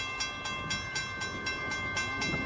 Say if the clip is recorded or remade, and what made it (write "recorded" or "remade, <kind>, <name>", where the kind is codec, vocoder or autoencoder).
recorded